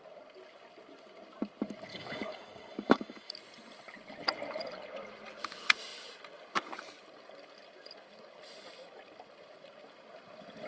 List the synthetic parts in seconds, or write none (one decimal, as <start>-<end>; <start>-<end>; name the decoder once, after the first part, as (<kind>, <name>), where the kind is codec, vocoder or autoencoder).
1.9-3.3 (codec, DAC)